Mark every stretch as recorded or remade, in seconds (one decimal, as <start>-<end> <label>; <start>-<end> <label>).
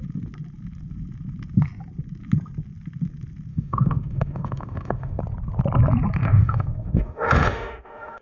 0.0-3.5 recorded; 3.5-5.2 remade; 5.2-6.2 recorded; 6.2-8.2 remade